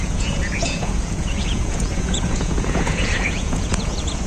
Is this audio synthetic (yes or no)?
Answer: yes